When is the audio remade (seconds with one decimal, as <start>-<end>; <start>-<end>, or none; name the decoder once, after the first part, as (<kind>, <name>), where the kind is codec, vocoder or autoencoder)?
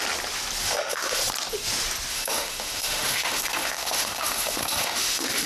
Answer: 0.6-1.2 (autoencoder, DAC-VAE); 2.1-5.5